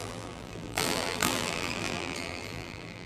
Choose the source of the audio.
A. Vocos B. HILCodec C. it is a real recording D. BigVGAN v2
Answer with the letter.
D